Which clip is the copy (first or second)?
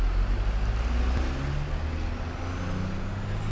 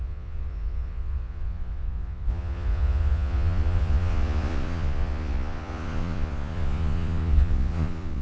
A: second